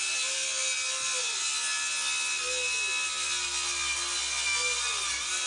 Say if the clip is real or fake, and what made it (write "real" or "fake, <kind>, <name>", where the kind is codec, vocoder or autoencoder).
real